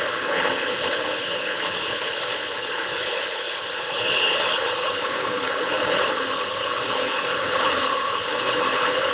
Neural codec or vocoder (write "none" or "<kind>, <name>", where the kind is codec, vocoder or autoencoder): codec, HILCodec